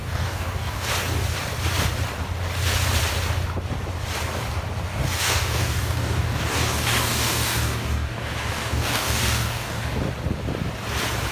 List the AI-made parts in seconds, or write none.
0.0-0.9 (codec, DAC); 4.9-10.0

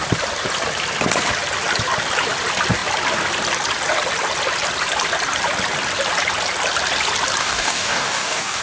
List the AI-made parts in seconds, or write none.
7.4-8.6 (codec, DAC)

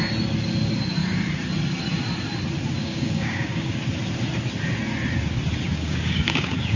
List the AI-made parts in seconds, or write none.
2.8-3.8 (codec, DAC); 5.7-6.8